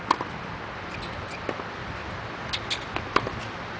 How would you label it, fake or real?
real